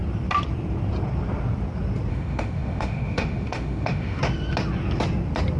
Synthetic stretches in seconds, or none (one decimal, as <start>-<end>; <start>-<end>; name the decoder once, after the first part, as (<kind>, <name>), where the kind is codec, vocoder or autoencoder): 2.1-4.2 (autoencoder, DAC-VAE)